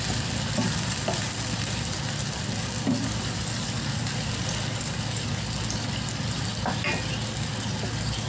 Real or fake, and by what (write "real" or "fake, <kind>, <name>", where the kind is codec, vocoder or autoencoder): fake, vocoder, BigVGAN v2